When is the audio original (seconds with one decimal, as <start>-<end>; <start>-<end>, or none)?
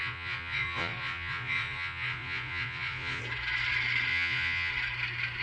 3.2-4.1; 4.7-5.4